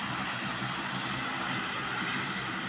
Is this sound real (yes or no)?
yes